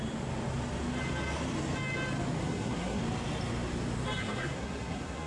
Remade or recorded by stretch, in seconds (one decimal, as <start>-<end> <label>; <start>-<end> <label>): 0.0-2.4 recorded; 2.4-3.0 remade; 3.0-4.2 recorded; 4.2-5.3 remade